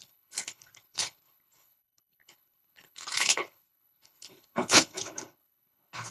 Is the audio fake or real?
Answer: fake